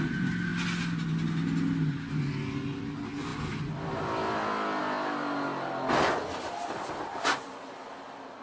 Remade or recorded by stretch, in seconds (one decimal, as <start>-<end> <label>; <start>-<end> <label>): 0.0-8.4 recorded